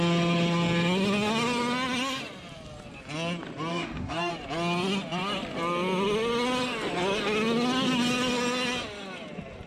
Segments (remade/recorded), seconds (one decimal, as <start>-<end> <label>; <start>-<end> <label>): 0.0-3.7 recorded; 3.7-4.3 remade; 4.3-9.7 recorded